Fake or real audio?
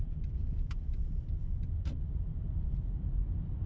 fake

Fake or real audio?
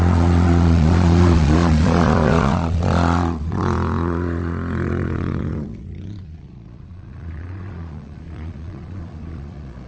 fake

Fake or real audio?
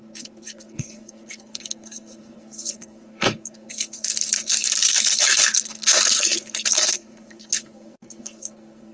fake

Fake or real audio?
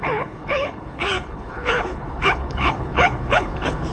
fake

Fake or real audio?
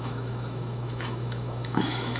fake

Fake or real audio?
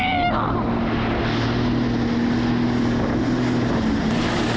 real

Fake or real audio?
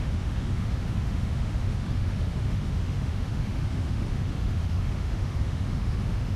fake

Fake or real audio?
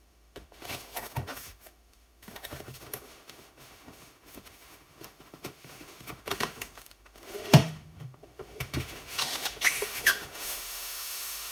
fake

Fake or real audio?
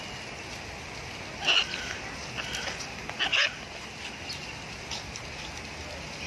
real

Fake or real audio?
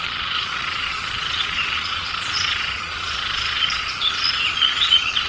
fake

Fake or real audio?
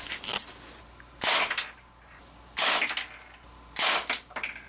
real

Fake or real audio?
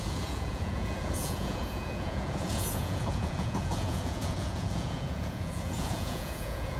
fake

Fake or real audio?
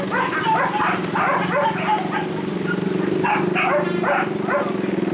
real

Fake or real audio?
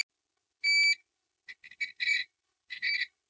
real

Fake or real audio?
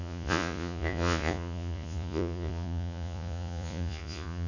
fake